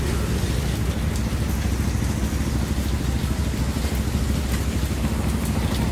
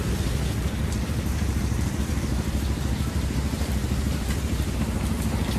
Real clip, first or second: first